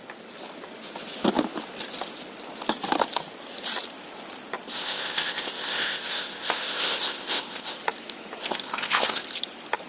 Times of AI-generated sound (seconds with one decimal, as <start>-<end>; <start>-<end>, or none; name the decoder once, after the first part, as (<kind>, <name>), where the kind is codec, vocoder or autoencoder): 4.7-7.8 (codec, ZipCodec); 8.4-9.2